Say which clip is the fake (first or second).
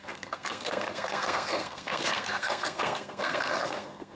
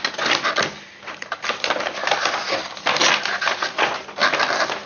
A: first